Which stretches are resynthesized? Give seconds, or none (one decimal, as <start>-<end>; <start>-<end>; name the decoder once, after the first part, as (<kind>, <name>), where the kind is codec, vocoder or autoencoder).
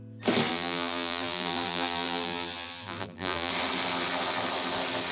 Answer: 0.5-3.5 (vocoder, BigVGAN v2)